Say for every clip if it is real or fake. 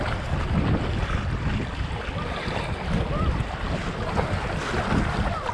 real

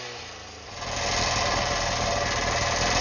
real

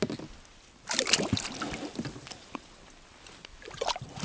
real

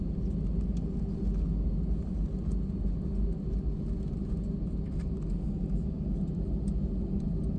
real